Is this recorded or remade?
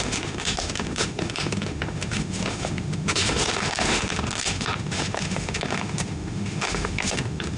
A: remade